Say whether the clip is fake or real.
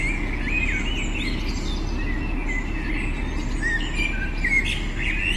real